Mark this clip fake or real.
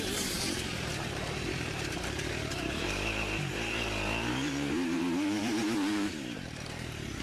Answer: fake